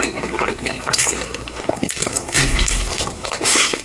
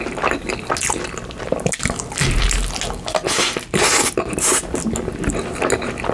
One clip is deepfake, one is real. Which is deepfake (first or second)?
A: first